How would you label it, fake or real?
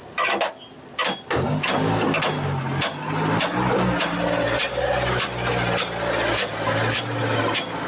real